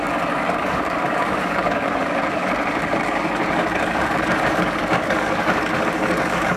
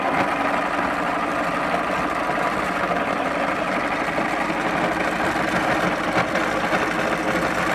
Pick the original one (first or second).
second